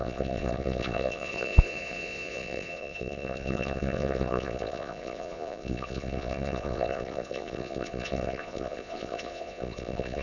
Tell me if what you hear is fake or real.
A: fake